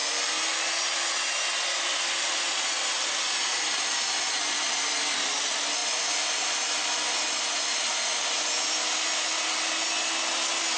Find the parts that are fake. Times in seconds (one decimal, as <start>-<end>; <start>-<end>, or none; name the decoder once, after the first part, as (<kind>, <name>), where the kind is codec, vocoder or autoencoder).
none